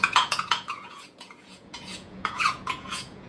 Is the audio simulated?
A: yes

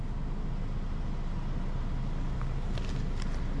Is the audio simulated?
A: no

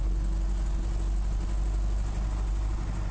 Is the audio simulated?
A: no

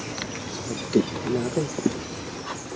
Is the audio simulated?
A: no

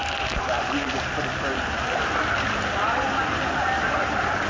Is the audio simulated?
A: no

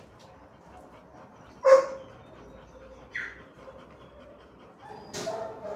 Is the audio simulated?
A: no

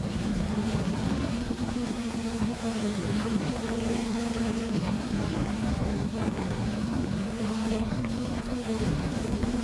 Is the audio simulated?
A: yes